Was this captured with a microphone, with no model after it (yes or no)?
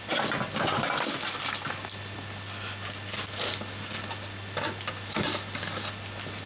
yes